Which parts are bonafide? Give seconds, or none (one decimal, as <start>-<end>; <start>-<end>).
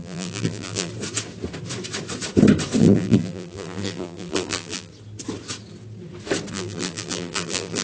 0.9-2.8; 4.9-6.5